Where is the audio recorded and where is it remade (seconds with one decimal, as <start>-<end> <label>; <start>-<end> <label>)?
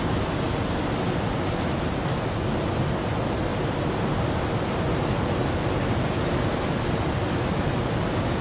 0.0-3.5 recorded; 3.5-4.8 remade; 4.8-8.4 recorded